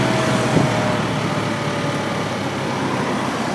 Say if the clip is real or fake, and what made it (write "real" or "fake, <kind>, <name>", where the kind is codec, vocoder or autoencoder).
real